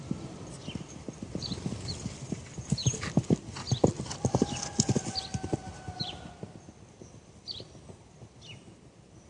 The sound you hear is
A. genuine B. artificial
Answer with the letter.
A